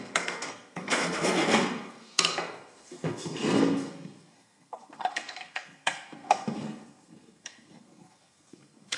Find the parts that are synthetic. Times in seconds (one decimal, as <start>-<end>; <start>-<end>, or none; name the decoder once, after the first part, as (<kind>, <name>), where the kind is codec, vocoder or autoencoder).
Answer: 0.0-9.0 (codec, SNAC)